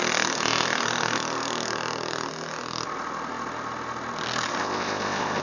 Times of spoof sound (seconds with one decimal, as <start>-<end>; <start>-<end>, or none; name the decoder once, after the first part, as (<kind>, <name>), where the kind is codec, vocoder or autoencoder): 4.6-5.4 (codec, ZipCodec)